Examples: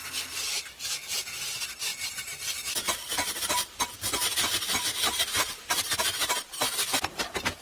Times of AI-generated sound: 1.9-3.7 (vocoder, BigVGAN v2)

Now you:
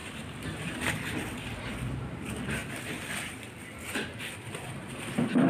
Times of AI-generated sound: 0.0-2.6 (vocoder, BigVGAN v2); 3.3-5.5

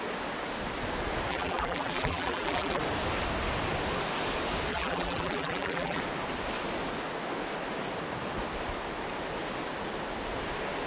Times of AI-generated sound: 1.3-2.8 (vocoder, BigVGAN v2); 4.7-6.0

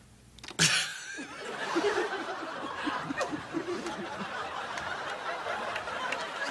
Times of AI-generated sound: 0.9-4.8 (vocoder, BigVGAN v2)